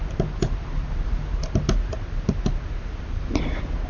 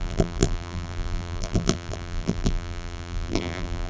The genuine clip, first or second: first